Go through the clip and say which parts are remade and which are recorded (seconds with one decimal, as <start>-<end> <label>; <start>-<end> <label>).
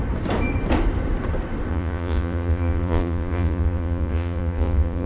0.0-1.7 recorded; 1.7-5.1 remade